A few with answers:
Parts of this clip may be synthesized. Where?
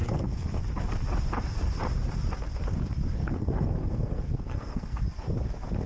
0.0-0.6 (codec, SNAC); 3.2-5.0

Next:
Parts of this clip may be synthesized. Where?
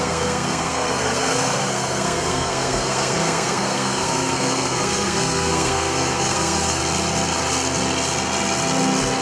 0.0-6.8 (codec, SNAC)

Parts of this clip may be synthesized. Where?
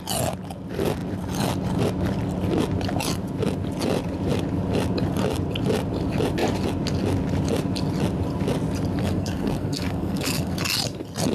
9.0-10.6 (codec, SNAC)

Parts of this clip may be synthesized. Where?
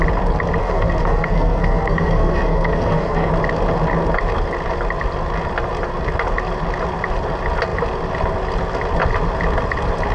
0.6-3.3 (codec, SNAC)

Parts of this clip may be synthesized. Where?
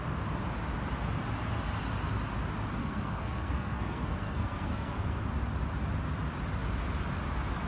2.8-5.2 (codec, SNAC)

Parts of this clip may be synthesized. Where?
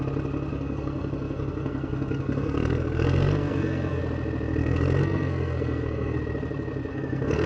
0.5-4.0 (codec, SNAC); 4.6-6.2; 6.9-7.5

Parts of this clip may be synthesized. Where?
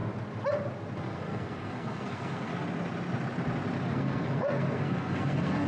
1.0-2.5 (codec, SNAC); 3.9-5.7